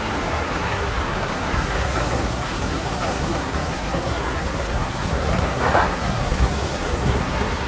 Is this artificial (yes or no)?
yes